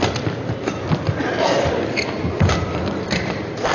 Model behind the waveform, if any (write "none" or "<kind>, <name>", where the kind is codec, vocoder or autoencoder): none